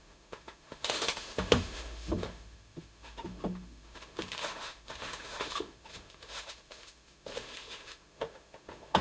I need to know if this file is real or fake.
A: fake